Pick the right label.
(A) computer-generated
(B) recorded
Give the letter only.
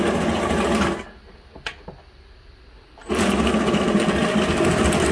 B